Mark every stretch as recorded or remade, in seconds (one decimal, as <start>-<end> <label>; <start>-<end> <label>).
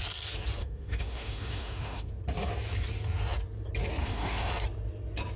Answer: 0.0-0.6 recorded; 0.6-2.1 remade; 2.1-4.0 recorded; 4.0-4.5 remade; 4.5-5.4 recorded